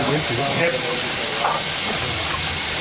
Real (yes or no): yes